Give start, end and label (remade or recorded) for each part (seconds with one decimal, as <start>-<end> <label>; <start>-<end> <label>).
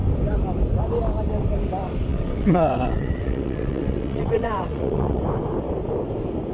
0.0-2.1 recorded; 2.1-5.2 remade; 5.2-6.5 recorded